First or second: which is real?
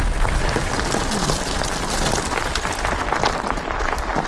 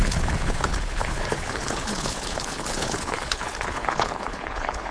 first